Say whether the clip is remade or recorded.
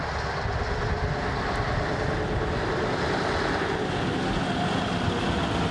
recorded